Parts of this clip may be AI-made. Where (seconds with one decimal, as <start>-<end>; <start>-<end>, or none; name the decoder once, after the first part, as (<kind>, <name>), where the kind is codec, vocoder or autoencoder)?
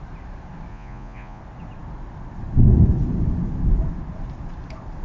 0.7-1.4 (vocoder, Vocos)